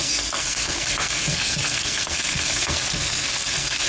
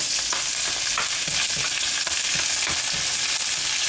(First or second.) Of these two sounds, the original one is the second